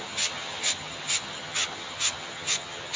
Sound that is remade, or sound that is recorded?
remade